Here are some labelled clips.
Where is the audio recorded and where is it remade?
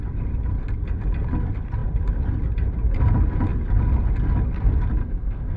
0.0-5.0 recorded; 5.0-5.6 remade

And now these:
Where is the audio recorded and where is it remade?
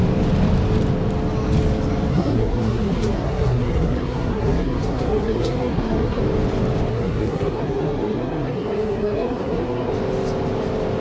0.0-2.1 recorded; 2.1-6.2 remade; 6.2-6.9 recorded; 6.9-9.9 remade; 9.9-11.0 recorded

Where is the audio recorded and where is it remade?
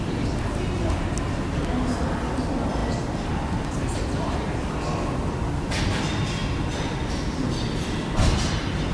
0.0-8.9 recorded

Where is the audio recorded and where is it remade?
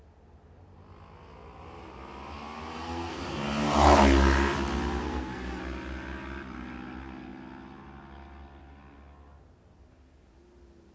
0.0-2.7 recorded; 2.7-3.2 remade; 3.2-5.0 recorded; 5.0-5.6 remade; 5.6-10.9 recorded